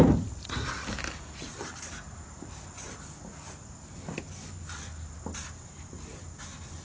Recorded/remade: recorded